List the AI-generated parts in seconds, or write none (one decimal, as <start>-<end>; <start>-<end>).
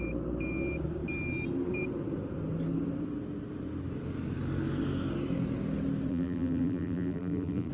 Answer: 6.1-7.7